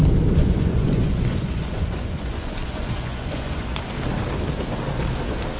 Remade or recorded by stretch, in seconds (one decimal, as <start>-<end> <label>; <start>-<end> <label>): 0.0-0.4 recorded; 0.4-3.8 remade; 3.8-5.6 recorded